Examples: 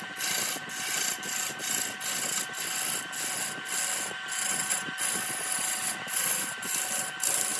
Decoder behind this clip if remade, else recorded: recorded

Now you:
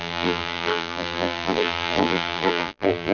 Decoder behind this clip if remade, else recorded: remade, vocoder, BigVGAN v2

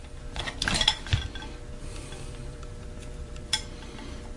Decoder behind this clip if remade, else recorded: remade, vocoder, BigVGAN v2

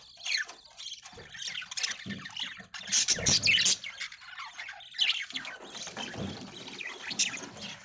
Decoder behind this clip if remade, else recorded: recorded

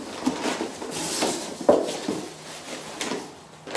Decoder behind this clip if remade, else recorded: recorded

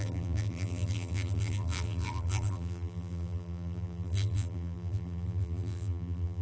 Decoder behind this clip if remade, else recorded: remade, vocoder, BigVGAN v2